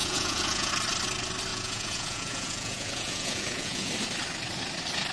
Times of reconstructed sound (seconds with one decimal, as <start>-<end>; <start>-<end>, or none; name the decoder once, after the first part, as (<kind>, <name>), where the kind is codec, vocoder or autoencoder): 0.0-0.7 (vocoder, Vocos); 1.5-3.9